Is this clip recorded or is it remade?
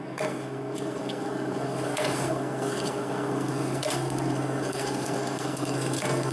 remade